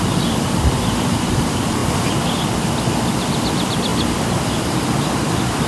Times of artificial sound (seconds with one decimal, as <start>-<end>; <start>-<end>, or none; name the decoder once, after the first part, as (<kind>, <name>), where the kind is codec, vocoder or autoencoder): 0.0-1.8 (vocoder, BigVGAN v2); 3.0-5.7